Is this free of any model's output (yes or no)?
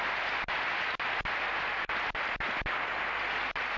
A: yes